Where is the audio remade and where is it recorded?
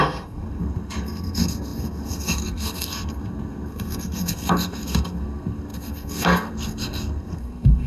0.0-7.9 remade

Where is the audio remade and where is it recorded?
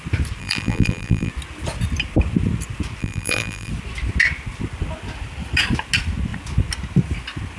0.0-0.4 recorded; 0.4-1.3 remade; 1.3-3.0 recorded; 3.0-3.7 remade; 3.7-7.6 recorded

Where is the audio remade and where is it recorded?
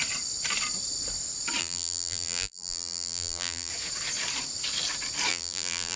0.0-1.6 recorded; 1.6-3.7 remade; 3.7-5.3 recorded; 5.3-6.0 remade